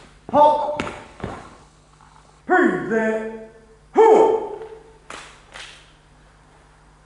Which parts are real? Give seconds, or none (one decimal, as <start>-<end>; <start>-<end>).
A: 0.0-0.6; 2.4-7.1